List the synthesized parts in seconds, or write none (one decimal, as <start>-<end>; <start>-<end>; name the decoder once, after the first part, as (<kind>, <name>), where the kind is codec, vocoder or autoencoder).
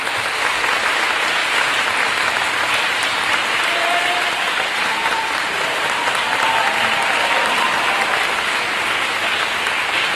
1.4-6.0 (vocoder, BigVGAN v2); 6.6-7.7